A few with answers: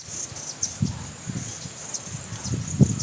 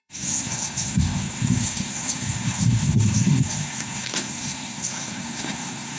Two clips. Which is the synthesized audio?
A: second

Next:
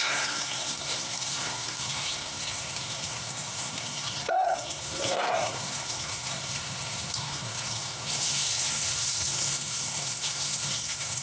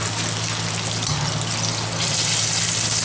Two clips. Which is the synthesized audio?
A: first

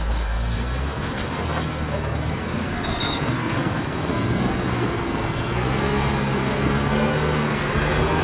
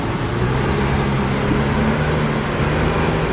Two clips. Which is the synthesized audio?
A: first